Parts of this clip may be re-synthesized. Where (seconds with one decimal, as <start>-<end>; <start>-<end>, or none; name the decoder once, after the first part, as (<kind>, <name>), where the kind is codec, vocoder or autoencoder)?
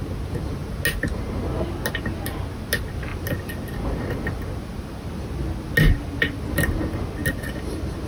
none